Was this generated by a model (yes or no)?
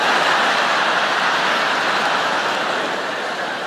no